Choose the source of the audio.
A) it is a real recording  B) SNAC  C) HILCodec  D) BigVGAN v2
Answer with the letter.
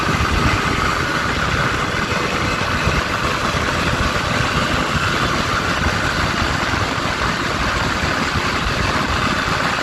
A